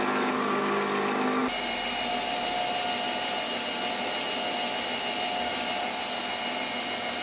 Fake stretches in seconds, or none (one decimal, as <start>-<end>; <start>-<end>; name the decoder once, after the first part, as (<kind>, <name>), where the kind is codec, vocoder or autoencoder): none